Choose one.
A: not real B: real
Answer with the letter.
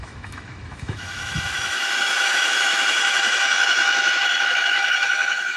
A